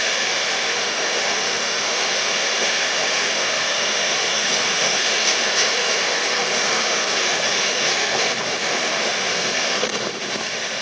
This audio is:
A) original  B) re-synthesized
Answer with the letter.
B